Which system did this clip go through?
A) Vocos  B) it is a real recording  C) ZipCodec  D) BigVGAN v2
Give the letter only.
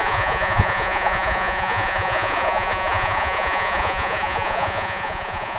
A